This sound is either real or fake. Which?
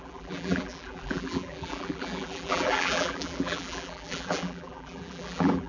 fake